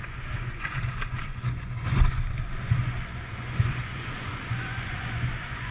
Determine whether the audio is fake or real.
fake